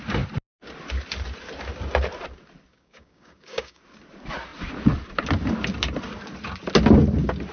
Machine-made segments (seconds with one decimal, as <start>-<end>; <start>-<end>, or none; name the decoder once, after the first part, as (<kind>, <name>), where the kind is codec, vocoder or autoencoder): 2.7-3.8 (codec, DAC)